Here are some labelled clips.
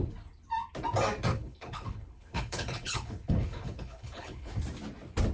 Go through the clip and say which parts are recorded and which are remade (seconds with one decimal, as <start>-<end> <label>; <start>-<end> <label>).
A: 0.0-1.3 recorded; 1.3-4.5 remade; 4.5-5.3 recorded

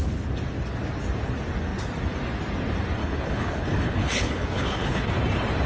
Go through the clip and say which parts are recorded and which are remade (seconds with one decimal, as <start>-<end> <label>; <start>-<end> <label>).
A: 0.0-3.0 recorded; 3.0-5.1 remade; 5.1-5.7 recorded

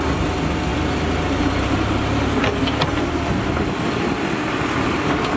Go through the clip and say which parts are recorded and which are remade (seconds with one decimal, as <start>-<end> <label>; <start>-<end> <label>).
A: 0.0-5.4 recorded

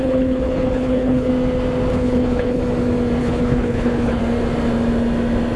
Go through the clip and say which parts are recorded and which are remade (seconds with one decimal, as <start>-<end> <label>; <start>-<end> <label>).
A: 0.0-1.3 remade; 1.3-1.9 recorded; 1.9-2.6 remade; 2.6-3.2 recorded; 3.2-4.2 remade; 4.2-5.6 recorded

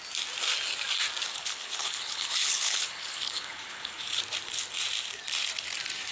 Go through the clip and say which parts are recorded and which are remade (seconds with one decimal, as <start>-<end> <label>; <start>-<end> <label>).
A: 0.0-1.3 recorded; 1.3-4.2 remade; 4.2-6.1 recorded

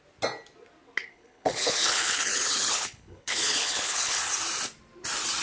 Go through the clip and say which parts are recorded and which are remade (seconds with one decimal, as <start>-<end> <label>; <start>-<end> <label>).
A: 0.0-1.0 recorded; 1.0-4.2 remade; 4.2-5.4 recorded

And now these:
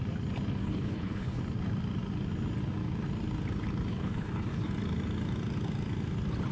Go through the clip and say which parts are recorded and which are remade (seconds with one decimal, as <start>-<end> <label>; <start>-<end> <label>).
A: 0.0-0.6 recorded; 0.6-1.4 remade; 1.4-3.9 recorded; 3.9-4.7 remade; 4.7-6.5 recorded

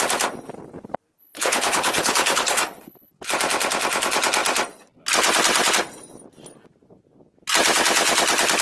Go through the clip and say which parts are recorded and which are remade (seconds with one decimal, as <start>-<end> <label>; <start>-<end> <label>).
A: 0.0-1.2 recorded; 1.2-3.1 remade; 3.1-8.6 recorded